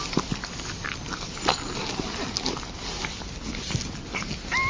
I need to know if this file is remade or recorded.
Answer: recorded